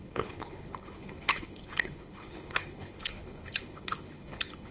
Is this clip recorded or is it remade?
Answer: remade